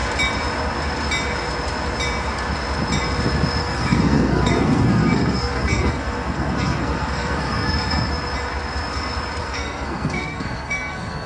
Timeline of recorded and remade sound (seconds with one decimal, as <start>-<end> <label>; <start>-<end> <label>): 0.0-3.6 recorded; 3.6-8.1 remade; 8.1-9.4 recorded; 9.4-11.3 remade